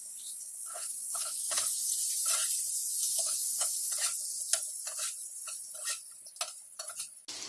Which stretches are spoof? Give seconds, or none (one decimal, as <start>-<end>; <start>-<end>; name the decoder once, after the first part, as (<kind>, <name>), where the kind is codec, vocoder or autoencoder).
0.0-1.9 (codec, HILCodec); 3.1-3.9